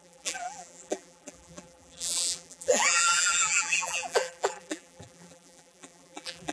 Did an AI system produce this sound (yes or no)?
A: yes